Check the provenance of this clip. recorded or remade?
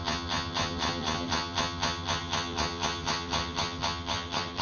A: remade